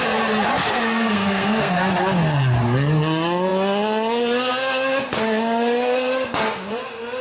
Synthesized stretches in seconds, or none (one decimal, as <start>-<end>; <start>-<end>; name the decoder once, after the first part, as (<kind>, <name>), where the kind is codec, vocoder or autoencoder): 0.6-1.8 (codec, SNAC)